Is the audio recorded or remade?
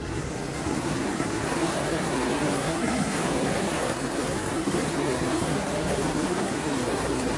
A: remade